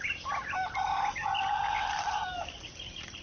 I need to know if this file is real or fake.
fake